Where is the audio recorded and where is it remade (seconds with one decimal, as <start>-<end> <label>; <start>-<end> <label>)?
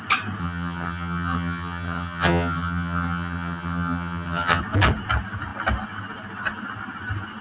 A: 0.0-0.4 recorded; 0.4-4.6 remade; 4.6-7.4 recorded